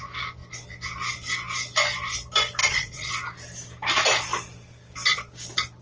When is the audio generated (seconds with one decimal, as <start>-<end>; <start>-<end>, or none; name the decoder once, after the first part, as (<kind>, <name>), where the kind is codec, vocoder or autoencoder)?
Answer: 2.6-3.1 (vocoder, Vocos)

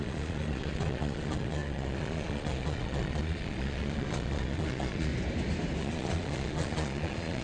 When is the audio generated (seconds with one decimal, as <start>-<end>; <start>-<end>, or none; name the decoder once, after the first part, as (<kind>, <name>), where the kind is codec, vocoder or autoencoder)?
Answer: 0.0-5.1 (vocoder, Vocos); 5.8-7.4

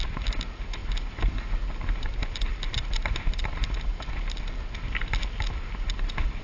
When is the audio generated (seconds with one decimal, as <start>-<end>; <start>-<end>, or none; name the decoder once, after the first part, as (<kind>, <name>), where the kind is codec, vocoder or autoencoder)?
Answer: none

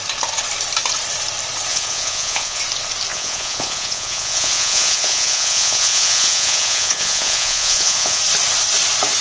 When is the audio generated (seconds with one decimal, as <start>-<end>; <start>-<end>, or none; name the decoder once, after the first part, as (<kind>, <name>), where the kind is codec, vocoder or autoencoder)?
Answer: 1.7-2.6 (vocoder, Vocos); 3.1-8.2

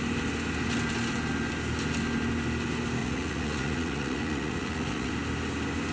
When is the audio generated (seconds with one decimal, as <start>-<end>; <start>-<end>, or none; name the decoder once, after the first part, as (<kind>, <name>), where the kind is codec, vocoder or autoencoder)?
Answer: 3.0-5.1 (vocoder, Vocos)